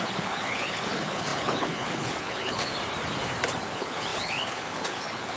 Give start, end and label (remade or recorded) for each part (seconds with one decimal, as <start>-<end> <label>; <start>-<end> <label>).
0.0-2.7 remade; 2.7-3.6 recorded; 3.6-5.4 remade